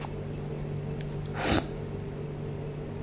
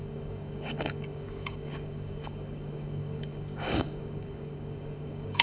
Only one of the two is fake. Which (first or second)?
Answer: second